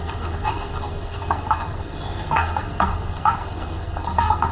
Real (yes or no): no